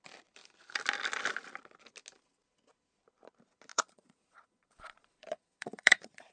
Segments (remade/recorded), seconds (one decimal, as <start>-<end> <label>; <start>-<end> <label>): 0.0-3.7 recorded; 3.7-6.3 remade